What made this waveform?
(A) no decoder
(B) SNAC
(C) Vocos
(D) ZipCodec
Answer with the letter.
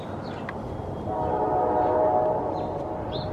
A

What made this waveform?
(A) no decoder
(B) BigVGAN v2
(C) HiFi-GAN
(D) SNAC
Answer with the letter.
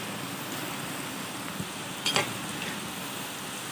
A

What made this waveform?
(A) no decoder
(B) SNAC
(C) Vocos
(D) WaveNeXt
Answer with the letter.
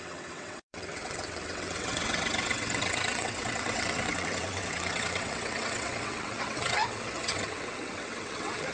D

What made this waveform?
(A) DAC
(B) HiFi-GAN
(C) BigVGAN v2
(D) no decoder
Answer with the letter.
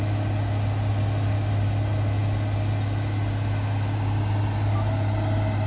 D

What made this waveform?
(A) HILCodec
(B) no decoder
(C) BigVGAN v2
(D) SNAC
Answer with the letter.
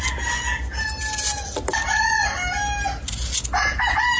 B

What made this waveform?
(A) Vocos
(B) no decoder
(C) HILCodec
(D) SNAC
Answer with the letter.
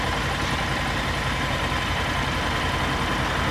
B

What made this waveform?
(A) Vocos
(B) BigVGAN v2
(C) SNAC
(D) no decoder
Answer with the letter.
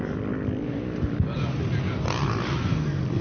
D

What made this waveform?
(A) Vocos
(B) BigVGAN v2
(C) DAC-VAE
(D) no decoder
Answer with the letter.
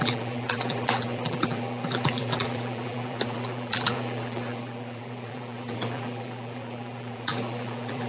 B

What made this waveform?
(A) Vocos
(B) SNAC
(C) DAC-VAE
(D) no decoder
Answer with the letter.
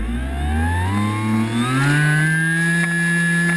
D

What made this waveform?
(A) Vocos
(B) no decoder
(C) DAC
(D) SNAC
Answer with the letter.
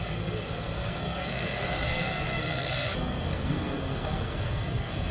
D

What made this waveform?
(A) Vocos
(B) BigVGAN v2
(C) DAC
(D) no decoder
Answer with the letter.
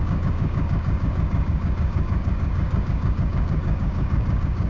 C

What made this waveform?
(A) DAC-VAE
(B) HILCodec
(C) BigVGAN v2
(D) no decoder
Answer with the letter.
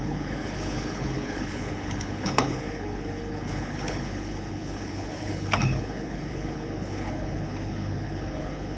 B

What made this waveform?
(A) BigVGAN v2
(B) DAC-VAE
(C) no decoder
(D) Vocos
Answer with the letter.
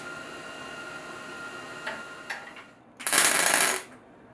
C